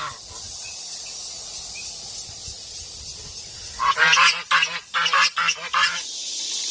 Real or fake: real